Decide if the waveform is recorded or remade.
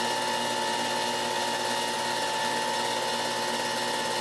recorded